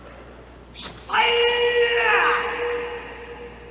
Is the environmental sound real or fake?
real